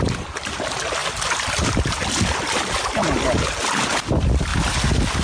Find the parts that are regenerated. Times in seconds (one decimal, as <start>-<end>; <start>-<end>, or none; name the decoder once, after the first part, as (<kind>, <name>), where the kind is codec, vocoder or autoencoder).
0.0-4.5 (vocoder, BigVGAN v2)